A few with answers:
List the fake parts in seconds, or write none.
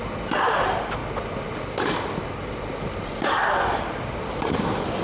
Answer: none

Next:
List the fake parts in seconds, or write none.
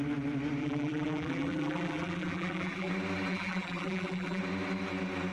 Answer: 0.6-2.9 (vocoder, BigVGAN v2); 3.3-4.4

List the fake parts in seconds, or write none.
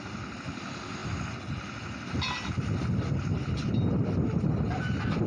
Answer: 3.3-5.3 (vocoder, BigVGAN v2)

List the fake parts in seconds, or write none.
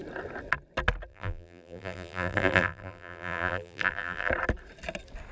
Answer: 1.1-4.3 (vocoder, BigVGAN v2)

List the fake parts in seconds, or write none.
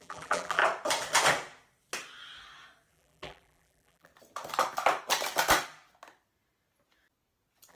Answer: 0.0-0.6 (vocoder, BigVGAN v2); 2.9-4.1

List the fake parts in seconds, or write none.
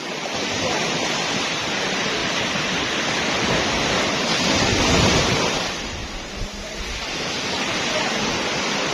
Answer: 2.2-2.8 (vocoder, BigVGAN v2)